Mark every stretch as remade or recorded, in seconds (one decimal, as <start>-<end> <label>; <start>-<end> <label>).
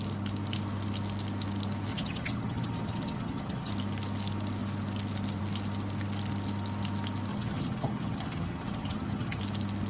0.0-1.9 recorded; 1.9-3.7 remade; 3.7-7.3 recorded; 7.3-9.4 remade; 9.4-9.9 recorded